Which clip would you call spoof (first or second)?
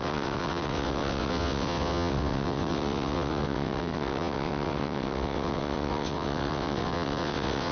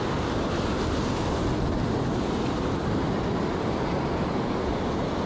first